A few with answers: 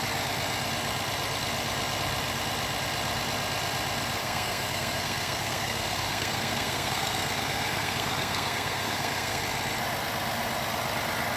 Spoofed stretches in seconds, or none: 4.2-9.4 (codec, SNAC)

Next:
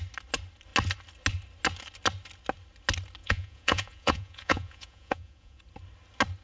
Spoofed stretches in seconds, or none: 3.2-5.6 (vocoder, Vocos)

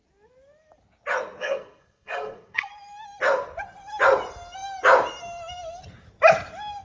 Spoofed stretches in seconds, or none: 1.4-2.7 (codec, SNAC)

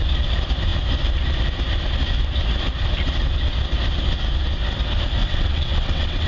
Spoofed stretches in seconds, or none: 5.2-6.3 (vocoder, WaveNeXt)

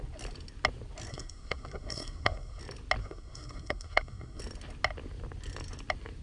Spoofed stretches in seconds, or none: 1.1-2.6 (codec, SNAC); 3.0-4.4

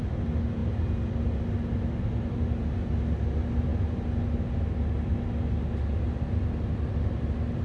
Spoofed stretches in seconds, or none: none

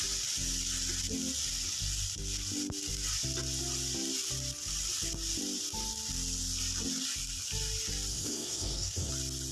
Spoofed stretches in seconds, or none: 8.1-9.1 (codec, SNAC)

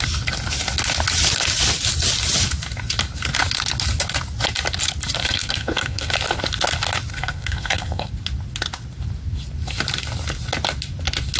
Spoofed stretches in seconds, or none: 5.2-6.1 (codec, SNAC); 7.1-8.1